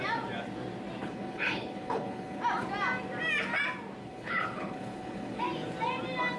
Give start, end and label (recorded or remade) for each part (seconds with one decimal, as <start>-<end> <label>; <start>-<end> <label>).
0.0-1.0 recorded; 1.0-2.4 remade; 2.4-4.0 recorded; 4.0-5.4 remade; 5.4-6.4 recorded